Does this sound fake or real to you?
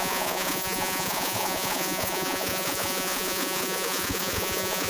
fake